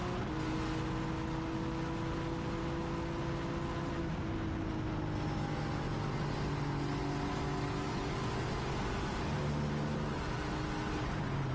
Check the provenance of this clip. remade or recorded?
recorded